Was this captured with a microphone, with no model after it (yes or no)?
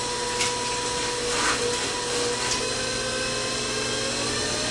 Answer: yes